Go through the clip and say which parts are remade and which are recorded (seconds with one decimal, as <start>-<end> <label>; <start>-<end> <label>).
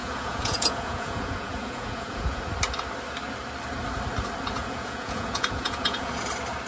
0.0-2.4 remade; 2.4-4.6 recorded; 4.6-6.3 remade; 6.3-6.7 recorded